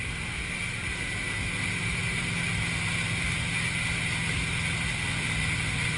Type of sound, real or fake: real